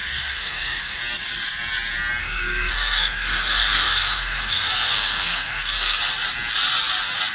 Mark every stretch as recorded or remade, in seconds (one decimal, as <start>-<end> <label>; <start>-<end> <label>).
0.0-1.0 remade; 1.0-2.2 recorded; 2.2-6.0 remade; 6.0-7.3 recorded